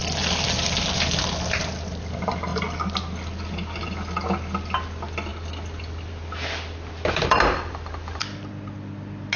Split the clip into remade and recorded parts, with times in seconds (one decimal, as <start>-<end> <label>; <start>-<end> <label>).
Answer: 0.0-9.4 recorded